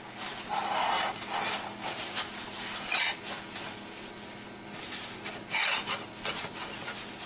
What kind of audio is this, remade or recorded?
recorded